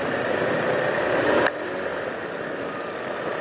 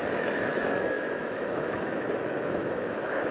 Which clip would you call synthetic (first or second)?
second